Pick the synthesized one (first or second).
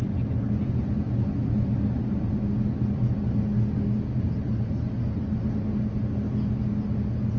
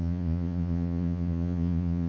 second